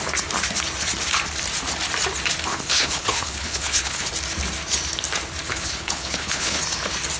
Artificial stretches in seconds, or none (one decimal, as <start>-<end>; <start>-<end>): 2.5-4.1; 5.5-6.6